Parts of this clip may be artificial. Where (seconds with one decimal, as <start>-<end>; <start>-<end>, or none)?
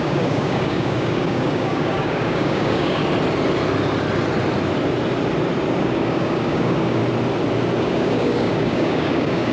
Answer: 0.0-3.0; 5.8-7.0; 7.8-9.5